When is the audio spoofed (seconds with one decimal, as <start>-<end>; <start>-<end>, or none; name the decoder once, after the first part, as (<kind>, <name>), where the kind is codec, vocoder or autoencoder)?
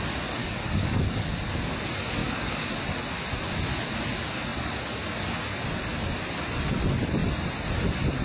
0.4-1.3 (codec, DAC); 2.2-2.7